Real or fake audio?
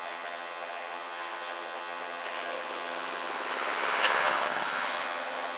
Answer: fake